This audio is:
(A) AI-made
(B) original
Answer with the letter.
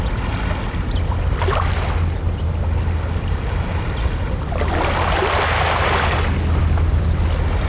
B